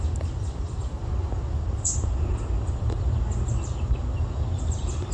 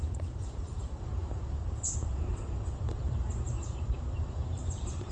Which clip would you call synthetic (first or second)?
second